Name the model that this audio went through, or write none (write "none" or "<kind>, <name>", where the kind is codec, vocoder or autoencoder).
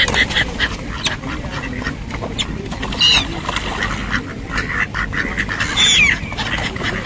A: none